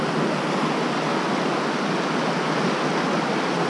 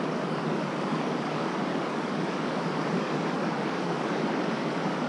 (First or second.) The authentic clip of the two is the first